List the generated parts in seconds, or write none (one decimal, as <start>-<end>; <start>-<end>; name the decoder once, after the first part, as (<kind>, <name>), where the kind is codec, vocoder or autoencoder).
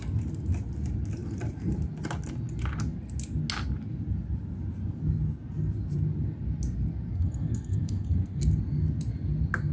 7.1-8.4 (codec, SNAC)